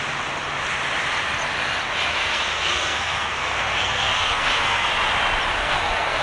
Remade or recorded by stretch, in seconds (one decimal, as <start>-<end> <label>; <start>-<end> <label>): 0.0-2.1 recorded; 2.1-4.9 remade; 4.9-5.6 recorded; 5.6-6.2 remade

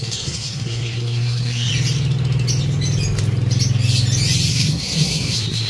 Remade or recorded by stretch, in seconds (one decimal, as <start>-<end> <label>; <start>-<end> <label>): 0.0-1.7 remade; 1.7-4.5 recorded; 4.5-5.7 remade

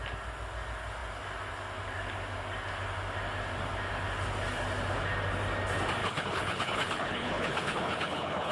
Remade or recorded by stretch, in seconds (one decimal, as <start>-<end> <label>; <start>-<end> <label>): 0.0-6.0 recorded; 6.0-8.5 remade

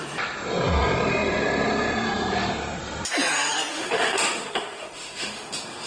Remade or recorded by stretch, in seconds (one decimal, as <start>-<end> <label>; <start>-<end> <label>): 0.0-3.7 recorded; 3.7-5.5 remade; 5.5-5.9 recorded

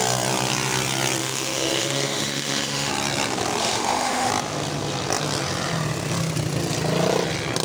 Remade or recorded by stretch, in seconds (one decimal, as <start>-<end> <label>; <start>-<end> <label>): 0.0-1.2 recorded; 1.2-2.9 remade; 2.9-3.6 recorded; 3.6-4.3 remade; 4.3-7.6 recorded

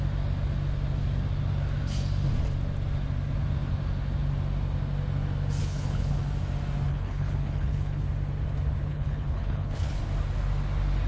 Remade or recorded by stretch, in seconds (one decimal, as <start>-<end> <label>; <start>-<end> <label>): 0.0-5.6 recorded; 5.6-6.2 remade; 6.2-6.9 recorded; 6.9-8.0 remade; 8.0-8.9 recorded; 8.9-10.0 remade; 10.0-11.1 recorded

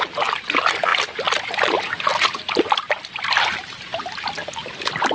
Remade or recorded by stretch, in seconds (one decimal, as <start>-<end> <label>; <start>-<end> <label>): 0.0-5.1 recorded

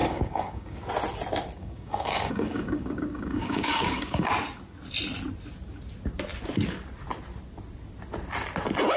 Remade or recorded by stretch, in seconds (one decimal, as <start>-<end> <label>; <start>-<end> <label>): 0.0-0.8 remade; 0.8-1.6 recorded; 1.6-4.3 remade; 4.3-9.0 recorded